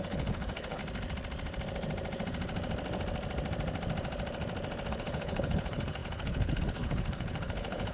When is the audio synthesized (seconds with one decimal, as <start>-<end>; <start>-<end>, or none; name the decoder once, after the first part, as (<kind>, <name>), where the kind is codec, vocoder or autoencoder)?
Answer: 0.0-0.8 (codec, HILCodec); 4.9-7.9